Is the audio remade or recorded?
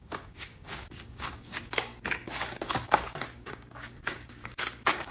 remade